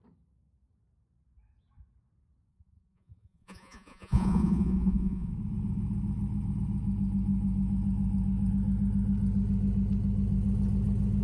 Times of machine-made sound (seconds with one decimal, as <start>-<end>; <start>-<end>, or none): 2.5-5.3